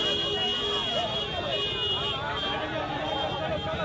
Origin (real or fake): real